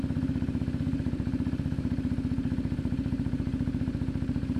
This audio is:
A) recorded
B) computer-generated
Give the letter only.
B